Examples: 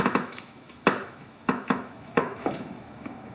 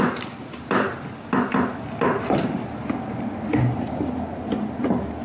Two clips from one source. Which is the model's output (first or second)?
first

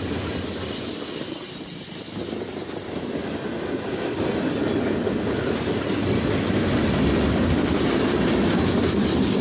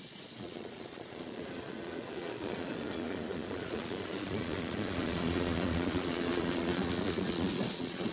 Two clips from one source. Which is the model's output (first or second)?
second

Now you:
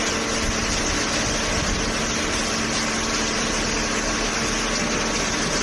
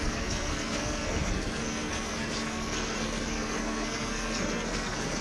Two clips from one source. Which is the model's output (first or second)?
second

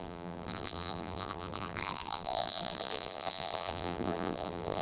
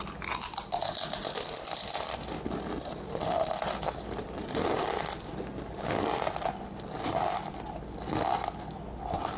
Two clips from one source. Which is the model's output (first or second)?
first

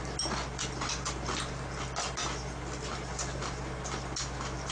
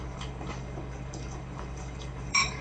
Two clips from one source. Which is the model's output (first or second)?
second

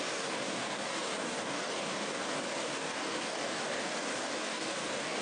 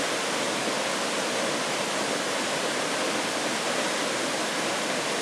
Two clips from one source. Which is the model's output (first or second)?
first